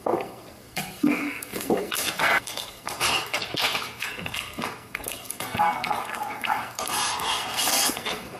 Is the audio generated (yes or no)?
yes